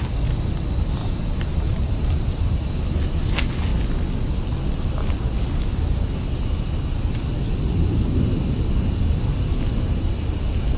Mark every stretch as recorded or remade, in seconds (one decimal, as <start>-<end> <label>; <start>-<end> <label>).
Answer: 0.0-1.0 recorded; 1.0-2.7 remade; 2.7-10.8 recorded